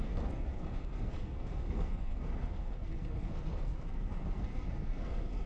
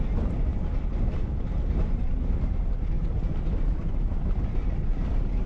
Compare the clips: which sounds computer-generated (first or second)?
first